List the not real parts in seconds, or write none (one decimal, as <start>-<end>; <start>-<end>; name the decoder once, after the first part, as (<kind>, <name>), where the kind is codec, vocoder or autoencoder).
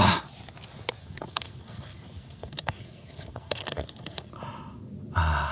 1.0-4.3 (codec, SNAC)